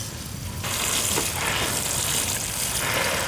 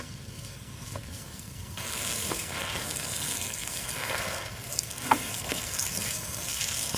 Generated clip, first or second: second